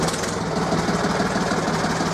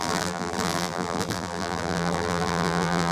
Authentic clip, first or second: first